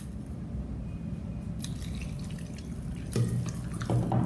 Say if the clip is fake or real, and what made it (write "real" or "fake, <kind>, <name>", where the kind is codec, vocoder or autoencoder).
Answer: real